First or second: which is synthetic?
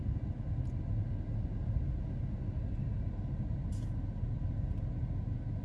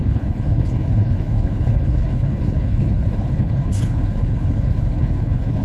second